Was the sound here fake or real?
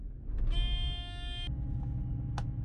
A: real